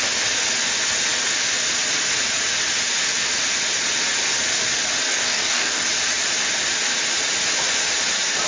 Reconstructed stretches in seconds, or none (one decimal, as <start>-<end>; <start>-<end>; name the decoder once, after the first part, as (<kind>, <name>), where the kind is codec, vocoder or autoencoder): 5.1-5.8 (codec, DAC)